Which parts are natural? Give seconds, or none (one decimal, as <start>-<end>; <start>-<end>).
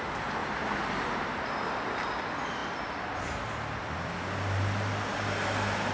0.0-0.4; 1.4-5.9